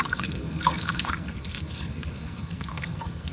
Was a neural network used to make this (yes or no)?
yes